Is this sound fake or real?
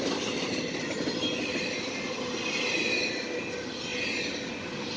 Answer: real